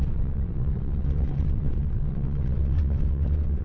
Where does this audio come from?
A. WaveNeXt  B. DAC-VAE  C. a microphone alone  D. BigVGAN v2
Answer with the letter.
A